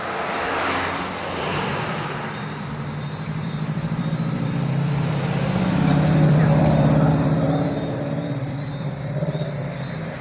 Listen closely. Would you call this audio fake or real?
fake